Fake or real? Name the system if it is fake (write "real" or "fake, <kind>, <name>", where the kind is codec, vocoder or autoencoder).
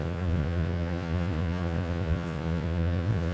fake, vocoder, Vocos